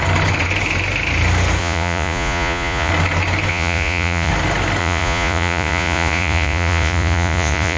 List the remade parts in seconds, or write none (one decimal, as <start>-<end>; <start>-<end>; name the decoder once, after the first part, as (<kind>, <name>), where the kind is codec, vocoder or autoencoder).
1.6-2.9 (vocoder, Vocos); 3.5-4.3; 4.8-7.8